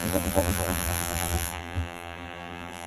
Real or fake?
fake